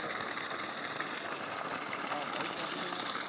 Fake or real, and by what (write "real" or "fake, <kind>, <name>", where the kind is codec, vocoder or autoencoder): real